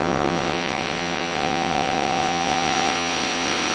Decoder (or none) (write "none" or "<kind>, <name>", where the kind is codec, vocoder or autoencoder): vocoder, WaveNeXt